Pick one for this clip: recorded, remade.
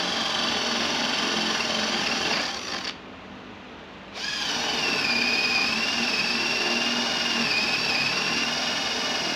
recorded